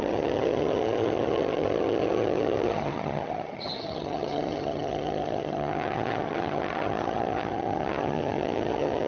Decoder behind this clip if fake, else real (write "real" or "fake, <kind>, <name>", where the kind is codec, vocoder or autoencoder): fake, vocoder, HiFi-GAN